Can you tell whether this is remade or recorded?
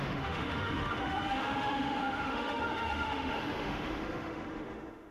remade